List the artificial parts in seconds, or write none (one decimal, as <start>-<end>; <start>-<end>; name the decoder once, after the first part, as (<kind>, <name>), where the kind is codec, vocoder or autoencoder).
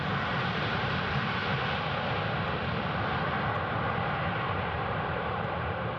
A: 0.0-1.4 (vocoder, BigVGAN v2); 4.0-6.0